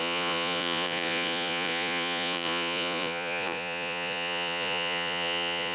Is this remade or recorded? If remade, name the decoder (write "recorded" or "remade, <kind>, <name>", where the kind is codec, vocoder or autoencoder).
remade, vocoder, Vocos